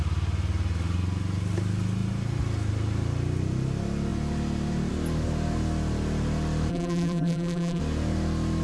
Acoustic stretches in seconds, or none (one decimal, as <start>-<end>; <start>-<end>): 0.0-6.7; 7.8-8.6